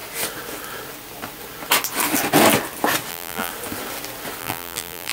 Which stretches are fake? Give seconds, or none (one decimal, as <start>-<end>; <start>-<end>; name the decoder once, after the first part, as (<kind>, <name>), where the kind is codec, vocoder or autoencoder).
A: 3.1-3.5 (vocoder, BigVGAN v2); 4.4-5.1